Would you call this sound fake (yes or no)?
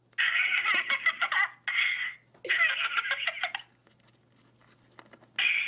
no